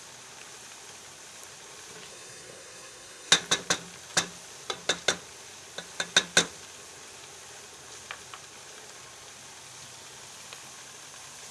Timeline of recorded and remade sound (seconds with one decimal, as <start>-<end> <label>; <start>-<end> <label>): 0.0-2.1 recorded; 2.1-3.3 remade; 3.3-11.5 recorded